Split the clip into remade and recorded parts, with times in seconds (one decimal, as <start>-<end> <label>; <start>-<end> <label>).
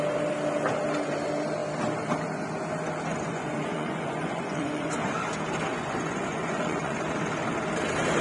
0.0-3.1 recorded; 3.1-4.9 remade; 4.9-5.7 recorded; 5.7-7.0 remade; 7.0-8.2 recorded